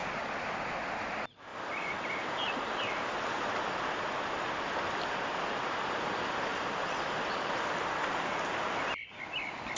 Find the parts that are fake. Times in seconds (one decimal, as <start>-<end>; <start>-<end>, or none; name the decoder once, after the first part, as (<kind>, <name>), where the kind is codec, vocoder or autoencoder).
1.5-3.2 (vocoder, BigVGAN v2); 6.5-8.3